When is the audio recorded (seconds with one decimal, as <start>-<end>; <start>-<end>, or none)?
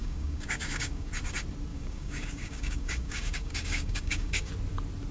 1.1-1.7; 4.5-5.1